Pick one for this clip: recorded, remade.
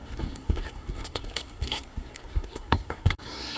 remade